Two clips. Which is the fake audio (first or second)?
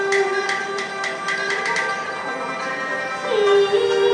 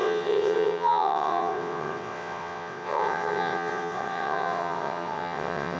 second